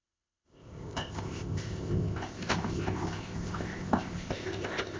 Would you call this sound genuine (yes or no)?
no